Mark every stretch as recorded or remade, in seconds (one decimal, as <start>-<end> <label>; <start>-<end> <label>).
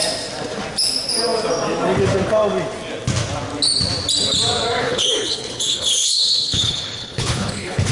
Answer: 0.0-4.8 recorded; 4.8-7.9 remade